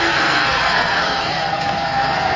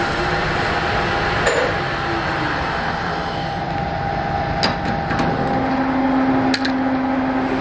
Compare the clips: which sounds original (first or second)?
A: second